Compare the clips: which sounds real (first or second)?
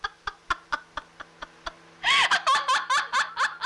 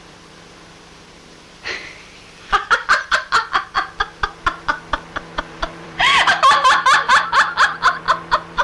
first